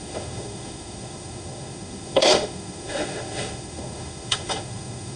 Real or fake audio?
fake